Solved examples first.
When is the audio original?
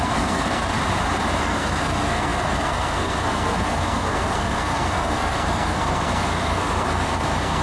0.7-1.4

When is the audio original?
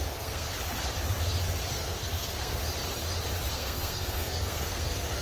0.5-1.7; 2.6-3.5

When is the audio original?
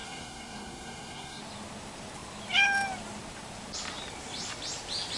1.4-5.2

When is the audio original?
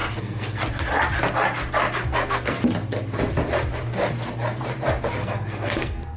0.6-2.1; 2.6-5.2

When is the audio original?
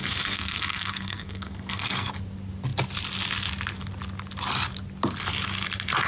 2.1-6.1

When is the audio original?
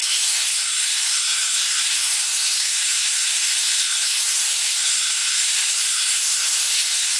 none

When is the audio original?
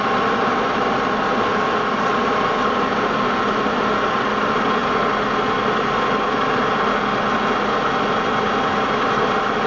0.0-9.7